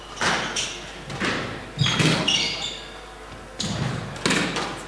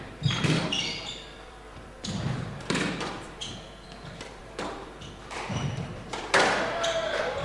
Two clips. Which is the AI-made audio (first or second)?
second